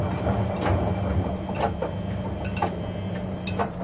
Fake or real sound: real